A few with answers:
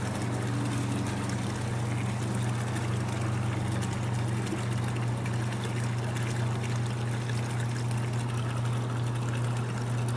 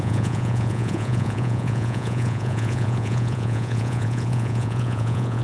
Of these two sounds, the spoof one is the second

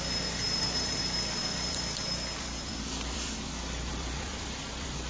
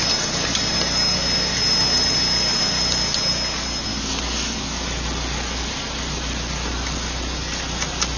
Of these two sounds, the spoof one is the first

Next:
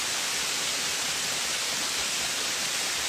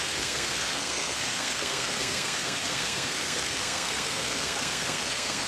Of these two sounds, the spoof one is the second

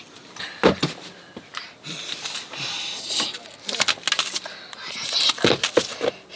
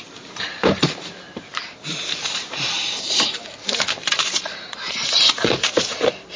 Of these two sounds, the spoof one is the second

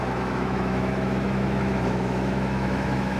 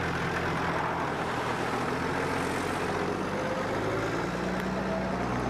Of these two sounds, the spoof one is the first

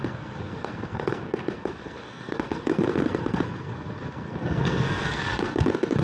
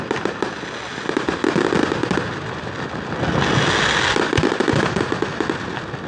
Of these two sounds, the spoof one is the first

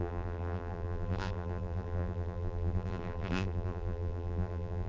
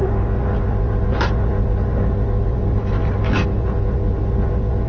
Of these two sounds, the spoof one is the first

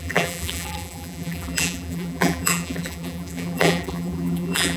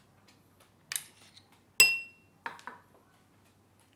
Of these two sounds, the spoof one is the first